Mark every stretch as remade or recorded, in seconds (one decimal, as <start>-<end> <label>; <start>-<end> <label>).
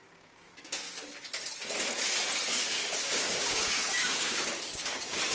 0.0-1.1 remade; 1.1-2.5 recorded; 2.5-5.3 remade